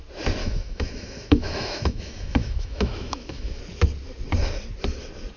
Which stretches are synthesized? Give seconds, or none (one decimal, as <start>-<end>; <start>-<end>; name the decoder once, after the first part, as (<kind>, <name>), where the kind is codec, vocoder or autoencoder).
0.4-3.6 (autoencoder, DAC-VAE)